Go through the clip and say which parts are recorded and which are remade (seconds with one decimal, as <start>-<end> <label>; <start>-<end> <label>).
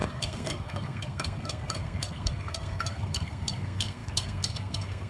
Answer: 0.0-5.1 remade